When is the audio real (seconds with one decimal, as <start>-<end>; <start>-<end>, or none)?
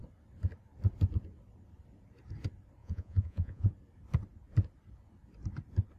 0.0-2.8; 3.7-6.0